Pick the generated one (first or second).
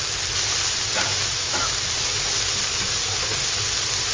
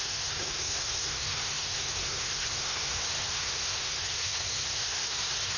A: second